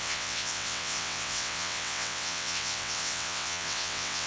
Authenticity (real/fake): fake